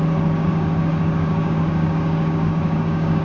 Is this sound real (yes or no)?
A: no